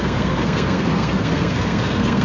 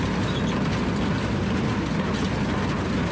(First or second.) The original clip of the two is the second